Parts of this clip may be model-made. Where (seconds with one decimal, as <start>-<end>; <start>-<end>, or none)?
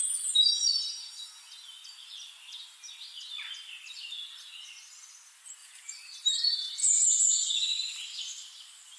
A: 0.0-1.3; 5.6-7.5